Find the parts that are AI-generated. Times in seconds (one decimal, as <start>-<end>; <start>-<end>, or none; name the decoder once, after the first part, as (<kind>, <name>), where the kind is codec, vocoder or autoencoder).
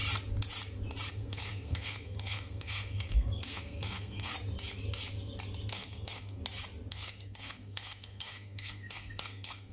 1.1-4.3 (codec, SNAC); 5.7-6.4; 6.9-9.7